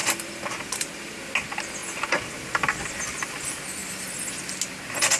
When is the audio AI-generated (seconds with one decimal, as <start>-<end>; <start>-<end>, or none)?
0.0-1.2; 1.8-2.3